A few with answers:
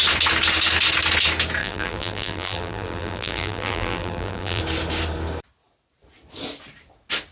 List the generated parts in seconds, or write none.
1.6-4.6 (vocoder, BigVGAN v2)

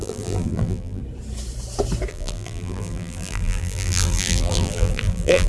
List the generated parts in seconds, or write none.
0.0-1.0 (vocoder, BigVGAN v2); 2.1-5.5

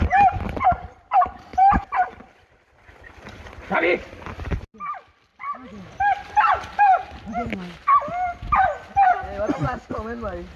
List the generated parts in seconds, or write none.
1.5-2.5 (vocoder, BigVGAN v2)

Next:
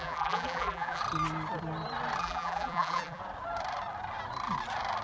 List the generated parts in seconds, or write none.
0.0-1.0 (vocoder, BigVGAN v2); 2.2-3.2

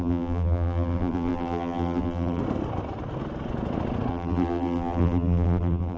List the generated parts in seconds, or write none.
0.0-2.4 (vocoder, BigVGAN v2); 4.1-6.0

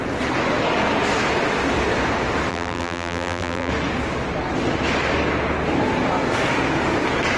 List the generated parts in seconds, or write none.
2.5-3.7 (vocoder, BigVGAN v2)

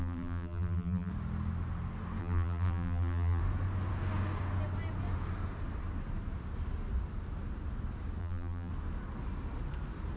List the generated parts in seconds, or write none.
0.0-1.1 (vocoder, BigVGAN v2); 2.2-3.4; 8.2-8.7